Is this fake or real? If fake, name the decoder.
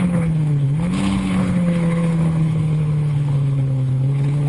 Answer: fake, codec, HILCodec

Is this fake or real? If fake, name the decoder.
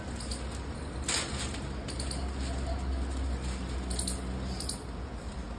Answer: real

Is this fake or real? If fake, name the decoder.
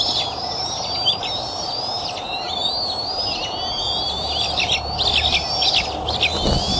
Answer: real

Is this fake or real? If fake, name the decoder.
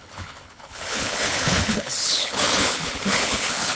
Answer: fake, codec, HILCodec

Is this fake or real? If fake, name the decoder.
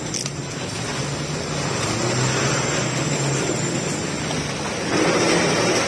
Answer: real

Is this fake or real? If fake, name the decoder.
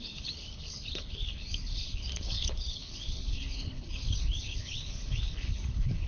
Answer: fake, codec, HILCodec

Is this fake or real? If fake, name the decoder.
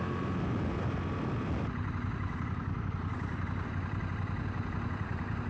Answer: real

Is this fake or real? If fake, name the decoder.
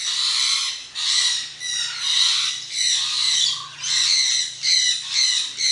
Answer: real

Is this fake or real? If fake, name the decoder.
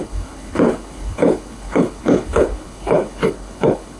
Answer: fake, codec, HILCodec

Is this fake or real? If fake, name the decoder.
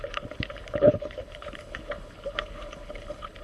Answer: fake, codec, HILCodec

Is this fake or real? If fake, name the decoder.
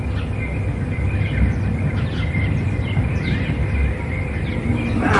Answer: real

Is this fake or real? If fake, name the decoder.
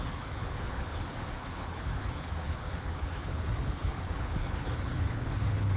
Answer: fake, codec, HILCodec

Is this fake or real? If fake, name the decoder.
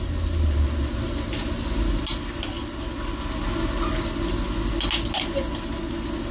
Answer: real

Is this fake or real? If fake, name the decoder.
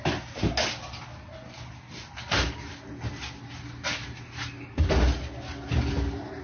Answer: real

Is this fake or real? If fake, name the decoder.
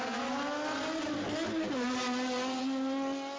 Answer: real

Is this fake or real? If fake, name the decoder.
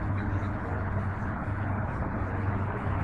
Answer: fake, codec, HILCodec